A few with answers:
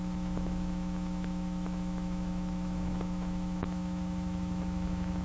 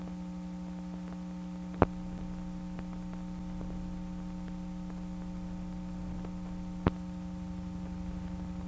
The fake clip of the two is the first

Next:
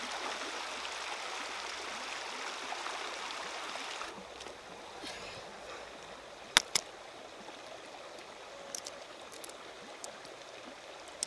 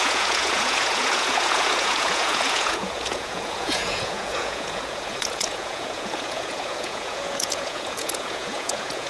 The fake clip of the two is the second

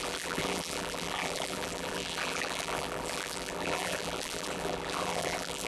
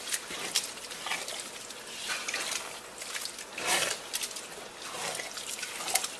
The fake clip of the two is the first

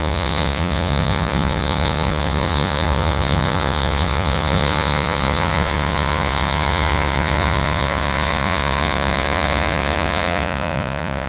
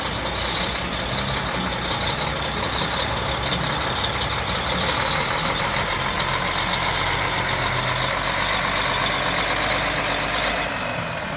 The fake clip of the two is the first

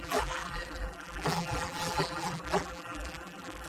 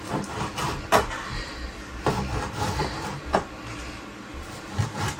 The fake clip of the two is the first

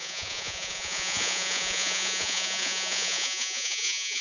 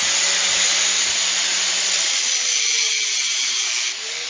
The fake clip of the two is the first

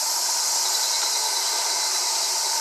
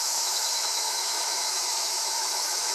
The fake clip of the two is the second